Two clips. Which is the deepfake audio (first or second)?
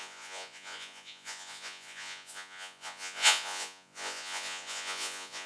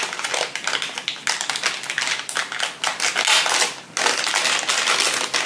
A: first